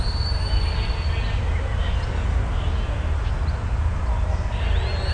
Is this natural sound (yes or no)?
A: yes